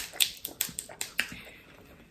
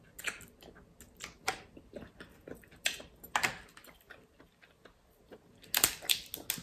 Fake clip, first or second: first